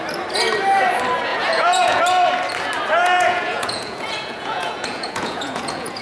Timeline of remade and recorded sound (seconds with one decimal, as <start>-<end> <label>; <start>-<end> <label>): 0.0-1.3 recorded; 1.3-2.0 remade; 2.0-3.0 recorded; 3.0-6.0 remade